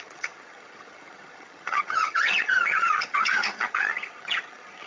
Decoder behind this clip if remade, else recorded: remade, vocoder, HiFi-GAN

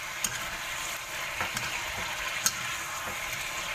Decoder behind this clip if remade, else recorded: recorded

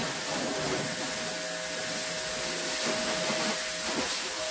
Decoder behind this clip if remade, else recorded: recorded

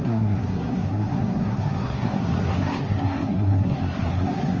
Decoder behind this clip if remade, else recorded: remade, codec, SNAC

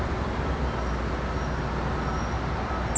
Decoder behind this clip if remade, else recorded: recorded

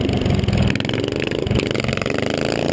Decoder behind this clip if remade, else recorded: recorded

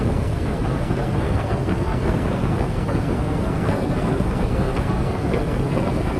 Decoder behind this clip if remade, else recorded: remade, codec, SNAC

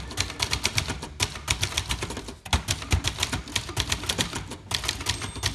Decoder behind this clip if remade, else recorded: recorded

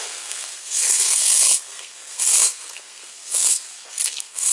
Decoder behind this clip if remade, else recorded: remade, codec, SNAC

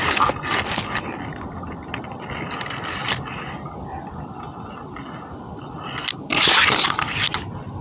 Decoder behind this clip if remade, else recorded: recorded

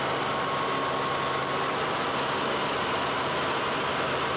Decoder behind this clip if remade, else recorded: recorded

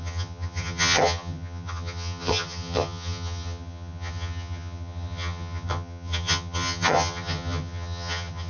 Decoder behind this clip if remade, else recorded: remade, vocoder, HiFi-GAN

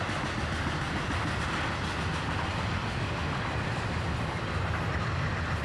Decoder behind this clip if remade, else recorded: recorded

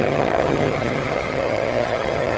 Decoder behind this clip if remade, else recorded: remade, vocoder, HiFi-GAN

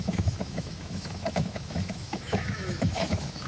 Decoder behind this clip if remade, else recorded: remade, autoencoder, DAC-VAE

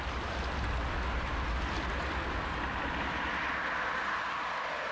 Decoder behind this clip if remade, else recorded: recorded